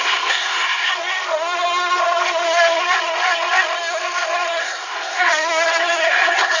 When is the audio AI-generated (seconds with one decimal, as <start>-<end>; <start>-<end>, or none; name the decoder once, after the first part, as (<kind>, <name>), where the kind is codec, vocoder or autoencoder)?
0.0-0.9 (codec, SNAC); 4.6-5.3; 6.0-6.6